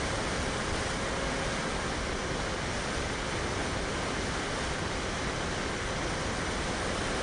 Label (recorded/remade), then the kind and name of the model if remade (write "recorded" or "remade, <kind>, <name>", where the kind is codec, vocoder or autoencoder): recorded